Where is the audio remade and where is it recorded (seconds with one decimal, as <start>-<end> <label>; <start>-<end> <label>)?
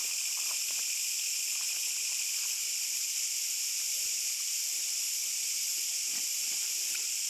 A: 0.0-7.3 recorded